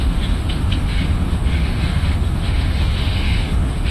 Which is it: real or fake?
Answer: fake